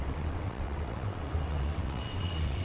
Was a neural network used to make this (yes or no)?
yes